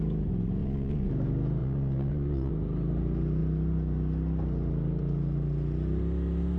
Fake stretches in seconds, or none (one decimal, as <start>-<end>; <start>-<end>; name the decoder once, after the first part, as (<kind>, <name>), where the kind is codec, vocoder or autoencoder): 0.6-1.1 (vocoder, Vocos); 1.6-2.5